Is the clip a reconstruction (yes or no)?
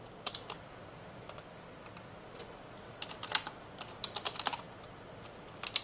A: no